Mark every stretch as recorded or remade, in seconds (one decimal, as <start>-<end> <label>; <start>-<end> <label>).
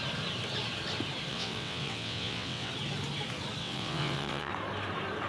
0.0-1.3 recorded; 1.3-2.7 remade; 2.7-3.6 recorded; 3.6-4.5 remade; 4.5-5.3 recorded